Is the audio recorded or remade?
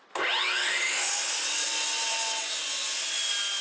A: recorded